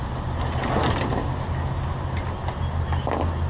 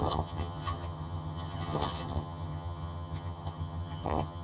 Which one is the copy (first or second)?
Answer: second